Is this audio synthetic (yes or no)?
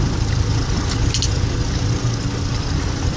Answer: no